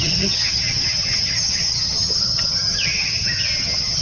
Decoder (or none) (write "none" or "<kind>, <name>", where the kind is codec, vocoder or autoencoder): vocoder, HiFi-GAN